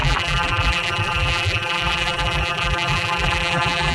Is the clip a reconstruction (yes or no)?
yes